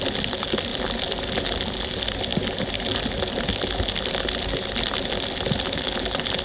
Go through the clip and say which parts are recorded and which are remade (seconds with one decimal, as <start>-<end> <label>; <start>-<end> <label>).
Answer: 0.0-6.4 recorded